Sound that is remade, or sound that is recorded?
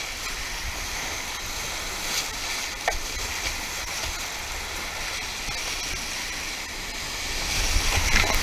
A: recorded